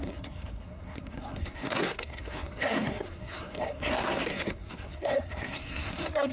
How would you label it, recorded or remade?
remade